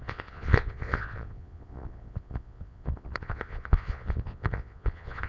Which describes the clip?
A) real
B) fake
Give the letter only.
B